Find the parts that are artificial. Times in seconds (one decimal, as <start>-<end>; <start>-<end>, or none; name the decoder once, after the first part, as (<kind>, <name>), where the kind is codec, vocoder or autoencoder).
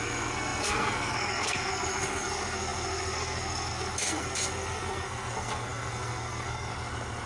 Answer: 0.0-6.7 (codec, SNAC)